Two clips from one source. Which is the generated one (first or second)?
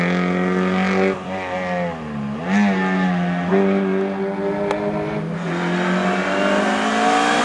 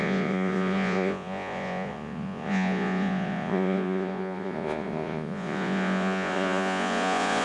second